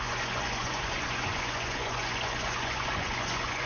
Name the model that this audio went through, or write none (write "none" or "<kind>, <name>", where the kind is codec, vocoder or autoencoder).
vocoder, Vocos